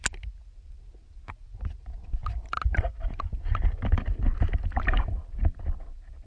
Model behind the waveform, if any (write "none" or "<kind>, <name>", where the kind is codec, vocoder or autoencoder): none